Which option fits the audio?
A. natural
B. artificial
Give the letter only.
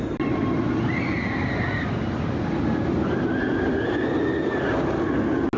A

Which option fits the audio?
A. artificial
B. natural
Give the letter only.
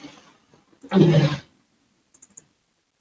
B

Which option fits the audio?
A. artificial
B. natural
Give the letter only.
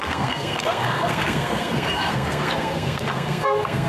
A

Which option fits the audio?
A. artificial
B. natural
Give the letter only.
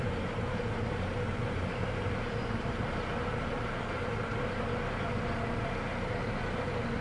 A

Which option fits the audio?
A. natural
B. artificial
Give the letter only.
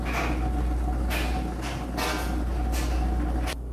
A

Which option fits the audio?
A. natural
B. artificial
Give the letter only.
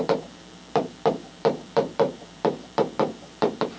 B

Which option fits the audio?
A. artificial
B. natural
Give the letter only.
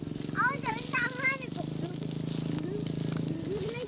B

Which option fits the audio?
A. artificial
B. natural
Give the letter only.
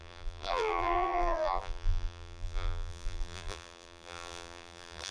A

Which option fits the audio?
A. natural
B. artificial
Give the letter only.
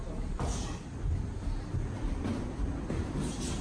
A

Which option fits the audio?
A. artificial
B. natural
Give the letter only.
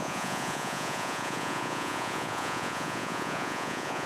A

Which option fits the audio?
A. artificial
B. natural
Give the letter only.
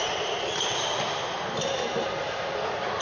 B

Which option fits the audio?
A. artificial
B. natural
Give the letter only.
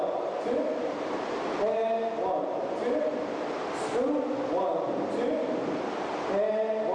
B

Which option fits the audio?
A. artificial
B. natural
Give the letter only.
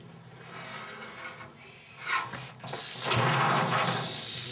B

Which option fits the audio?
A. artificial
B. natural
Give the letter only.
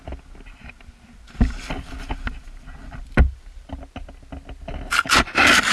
B